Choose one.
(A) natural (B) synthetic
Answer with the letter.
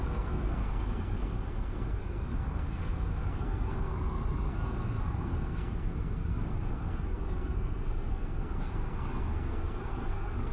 B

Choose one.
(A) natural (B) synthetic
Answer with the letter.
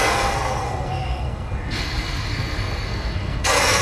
B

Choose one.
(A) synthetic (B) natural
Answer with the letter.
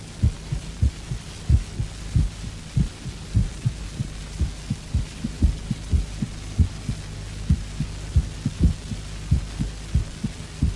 B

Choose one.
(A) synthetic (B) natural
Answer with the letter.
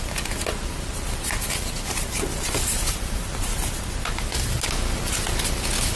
B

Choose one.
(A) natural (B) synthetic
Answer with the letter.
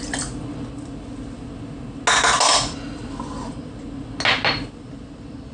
A